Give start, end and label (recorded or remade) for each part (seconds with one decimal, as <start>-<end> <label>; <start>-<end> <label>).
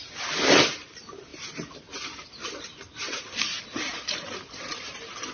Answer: 0.0-1.3 remade; 1.3-1.9 recorded; 1.9-5.3 remade